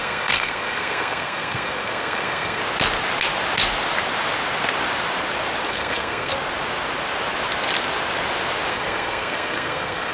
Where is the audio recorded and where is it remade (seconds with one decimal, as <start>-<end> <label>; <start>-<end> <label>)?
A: 0.0-2.6 remade; 2.6-5.7 recorded; 5.7-6.3 remade; 6.3-8.7 recorded; 8.7-10.1 remade